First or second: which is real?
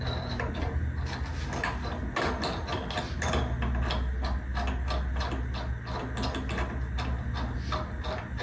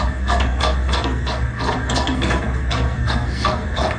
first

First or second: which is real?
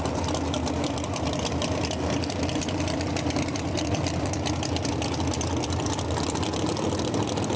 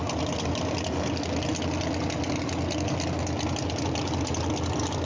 second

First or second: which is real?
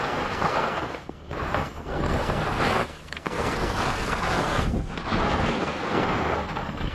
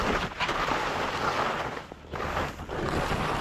second